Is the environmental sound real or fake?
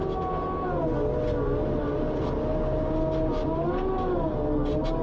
real